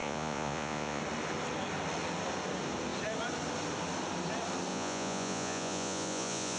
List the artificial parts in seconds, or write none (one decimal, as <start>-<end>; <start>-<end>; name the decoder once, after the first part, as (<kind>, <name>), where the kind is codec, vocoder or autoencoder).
0.0-1.0 (vocoder, Vocos); 4.7-6.6